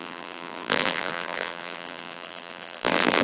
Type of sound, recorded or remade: remade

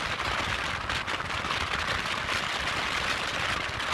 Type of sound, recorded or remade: recorded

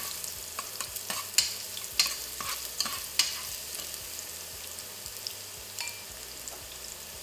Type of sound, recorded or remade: recorded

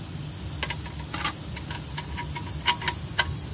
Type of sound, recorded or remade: recorded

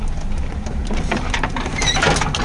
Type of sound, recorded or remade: recorded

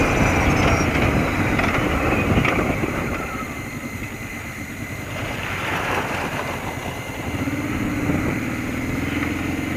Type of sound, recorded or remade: recorded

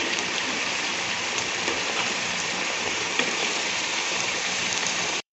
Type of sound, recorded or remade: remade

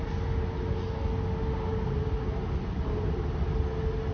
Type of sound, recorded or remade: recorded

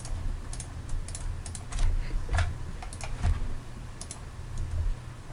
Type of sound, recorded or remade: recorded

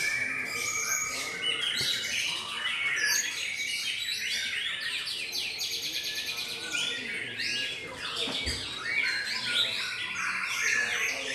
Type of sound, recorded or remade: recorded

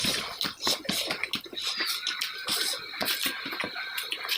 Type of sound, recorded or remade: recorded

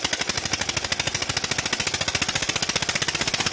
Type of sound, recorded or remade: recorded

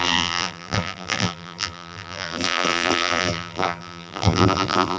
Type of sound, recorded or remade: remade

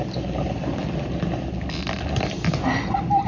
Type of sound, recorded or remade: recorded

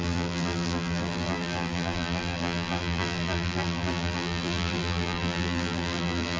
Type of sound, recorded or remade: remade